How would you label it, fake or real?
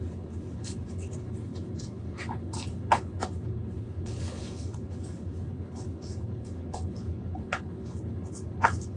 fake